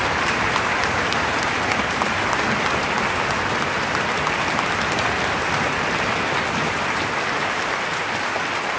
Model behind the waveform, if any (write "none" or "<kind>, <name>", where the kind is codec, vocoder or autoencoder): none